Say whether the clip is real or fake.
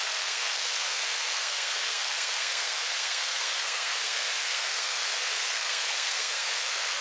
fake